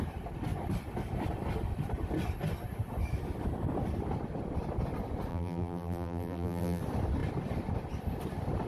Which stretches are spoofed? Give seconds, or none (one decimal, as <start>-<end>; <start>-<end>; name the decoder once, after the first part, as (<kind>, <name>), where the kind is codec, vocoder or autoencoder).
5.3-6.8 (vocoder, BigVGAN v2)

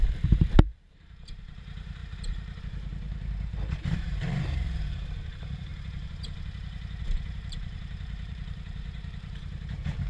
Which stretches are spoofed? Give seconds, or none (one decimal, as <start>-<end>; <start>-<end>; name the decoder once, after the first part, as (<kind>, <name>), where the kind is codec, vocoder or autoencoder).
0.0-2.0 (vocoder, BigVGAN v2); 2.6-10.1

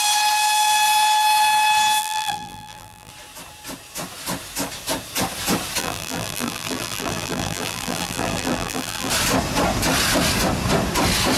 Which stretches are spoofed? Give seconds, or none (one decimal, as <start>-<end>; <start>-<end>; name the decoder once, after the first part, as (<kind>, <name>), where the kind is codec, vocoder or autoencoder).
2.0-3.1 (vocoder, BigVGAN v2); 5.8-9.1

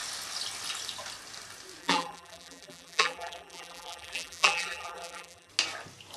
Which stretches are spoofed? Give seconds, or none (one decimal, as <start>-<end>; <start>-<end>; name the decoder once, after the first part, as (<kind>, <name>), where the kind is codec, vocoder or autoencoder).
1.8-5.5 (vocoder, BigVGAN v2)